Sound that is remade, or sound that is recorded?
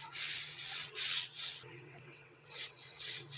remade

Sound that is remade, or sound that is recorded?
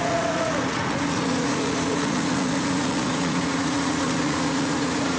remade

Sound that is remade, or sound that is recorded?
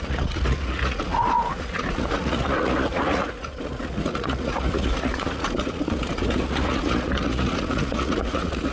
remade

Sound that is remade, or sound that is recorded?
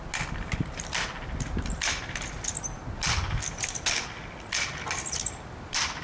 recorded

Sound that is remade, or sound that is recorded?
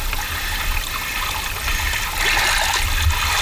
recorded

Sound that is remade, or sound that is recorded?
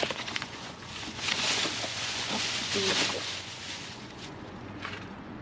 remade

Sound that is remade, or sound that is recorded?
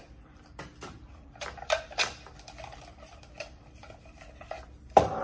remade